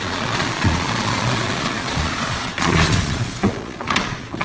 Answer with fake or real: fake